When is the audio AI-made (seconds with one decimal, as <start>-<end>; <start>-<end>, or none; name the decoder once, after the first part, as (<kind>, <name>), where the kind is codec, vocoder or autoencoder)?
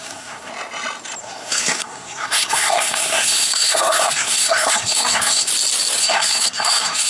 0.0-0.5 (codec, SNAC); 1.2-5.5; 6.0-7.1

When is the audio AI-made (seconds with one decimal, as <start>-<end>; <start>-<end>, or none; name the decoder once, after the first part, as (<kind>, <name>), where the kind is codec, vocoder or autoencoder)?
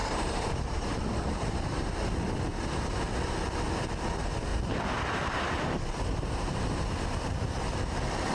0.0-1.9 (vocoder, BigVGAN v2); 4.5-6.6